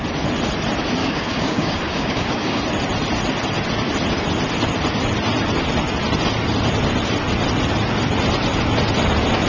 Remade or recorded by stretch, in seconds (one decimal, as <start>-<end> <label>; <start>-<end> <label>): 0.0-1.0 recorded; 1.0-2.6 remade; 2.6-9.5 recorded

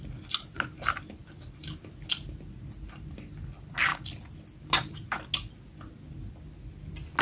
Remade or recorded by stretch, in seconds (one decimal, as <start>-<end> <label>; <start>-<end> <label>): 0.0-7.2 recorded